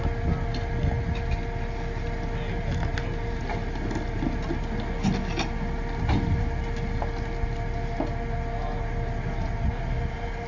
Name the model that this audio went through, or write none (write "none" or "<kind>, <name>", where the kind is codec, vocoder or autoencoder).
none